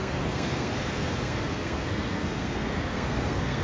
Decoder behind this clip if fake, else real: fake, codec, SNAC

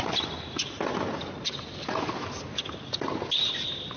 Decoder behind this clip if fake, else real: real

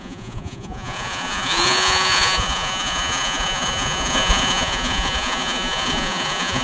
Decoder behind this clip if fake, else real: fake, vocoder, Vocos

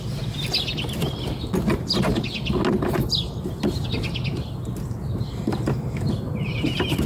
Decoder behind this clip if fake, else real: real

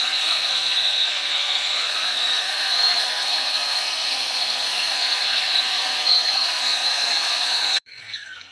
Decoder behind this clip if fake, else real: fake, codec, SNAC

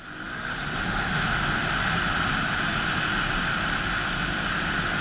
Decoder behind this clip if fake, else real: real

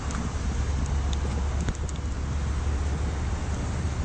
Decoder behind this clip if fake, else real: real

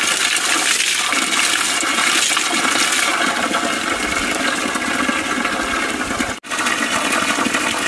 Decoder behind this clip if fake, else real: real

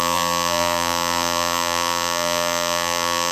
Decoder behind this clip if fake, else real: fake, vocoder, BigVGAN v2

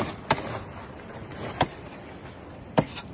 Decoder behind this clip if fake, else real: real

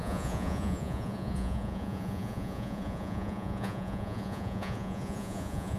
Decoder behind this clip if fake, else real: fake, vocoder, Vocos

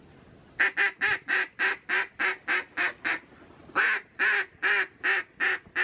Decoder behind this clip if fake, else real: real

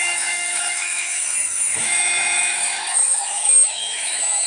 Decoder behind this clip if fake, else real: fake, autoencoder, DAC-VAE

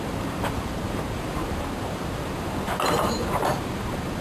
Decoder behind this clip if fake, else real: fake, vocoder, BigVGAN v2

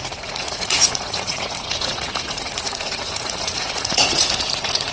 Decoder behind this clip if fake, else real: fake, vocoder, Vocos